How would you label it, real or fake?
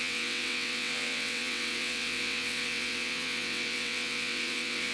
fake